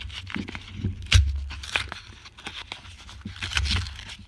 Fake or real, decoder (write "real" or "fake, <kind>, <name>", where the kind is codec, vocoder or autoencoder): real